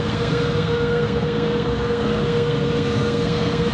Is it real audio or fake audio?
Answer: fake